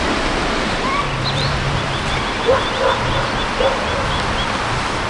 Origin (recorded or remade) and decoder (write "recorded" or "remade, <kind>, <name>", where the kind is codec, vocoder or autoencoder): recorded